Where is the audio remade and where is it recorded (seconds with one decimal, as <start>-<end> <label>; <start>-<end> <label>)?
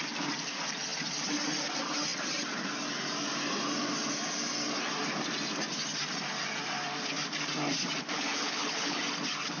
0.0-8.1 recorded; 8.1-9.0 remade; 9.0-9.6 recorded